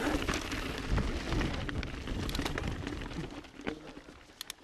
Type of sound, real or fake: real